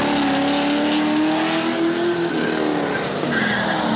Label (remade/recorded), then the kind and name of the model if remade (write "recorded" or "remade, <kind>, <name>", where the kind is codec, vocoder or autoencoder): recorded